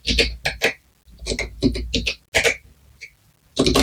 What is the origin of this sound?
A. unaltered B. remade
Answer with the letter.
A